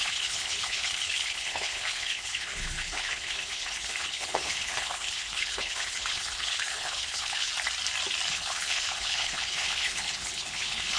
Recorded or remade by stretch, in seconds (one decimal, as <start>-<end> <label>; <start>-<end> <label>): 0.0-7.5 remade; 7.5-8.3 recorded; 8.3-11.0 remade